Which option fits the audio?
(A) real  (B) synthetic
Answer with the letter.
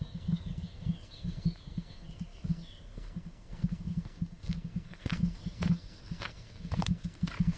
B